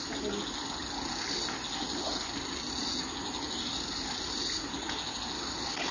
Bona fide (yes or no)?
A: yes